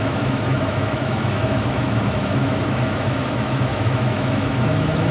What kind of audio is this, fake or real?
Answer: fake